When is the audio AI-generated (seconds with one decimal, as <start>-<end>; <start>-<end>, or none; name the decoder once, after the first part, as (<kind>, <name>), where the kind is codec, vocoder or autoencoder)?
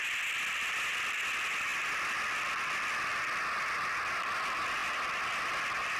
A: none